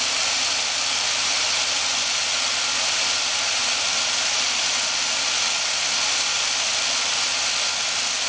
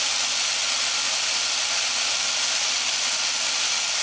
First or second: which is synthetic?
first